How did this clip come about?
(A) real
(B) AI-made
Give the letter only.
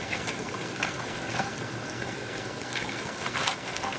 B